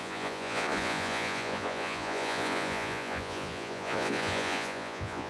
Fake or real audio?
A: fake